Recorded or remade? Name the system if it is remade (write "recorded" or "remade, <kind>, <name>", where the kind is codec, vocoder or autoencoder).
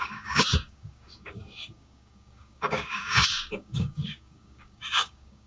remade, codec, DAC